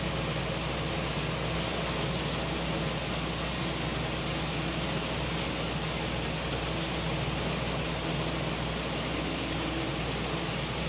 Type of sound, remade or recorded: recorded